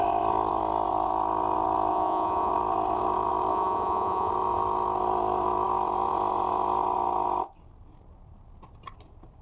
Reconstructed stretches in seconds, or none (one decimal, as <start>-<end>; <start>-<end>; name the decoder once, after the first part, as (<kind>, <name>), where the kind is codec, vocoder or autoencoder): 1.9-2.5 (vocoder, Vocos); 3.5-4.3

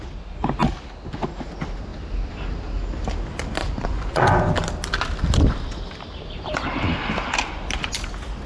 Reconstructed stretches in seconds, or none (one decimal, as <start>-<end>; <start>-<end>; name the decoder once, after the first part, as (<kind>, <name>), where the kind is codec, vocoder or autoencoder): 3.6-4.5 (vocoder, Vocos)

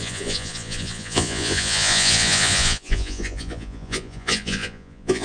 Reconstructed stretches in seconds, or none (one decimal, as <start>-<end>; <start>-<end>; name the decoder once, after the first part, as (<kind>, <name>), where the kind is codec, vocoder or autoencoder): 0.0-5.2 (vocoder, Vocos)